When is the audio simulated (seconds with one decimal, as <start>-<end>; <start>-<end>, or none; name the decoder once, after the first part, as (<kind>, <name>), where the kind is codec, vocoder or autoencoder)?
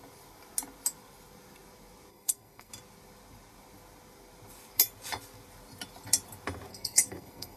2.1-2.7 (codec, SNAC); 6.7-7.6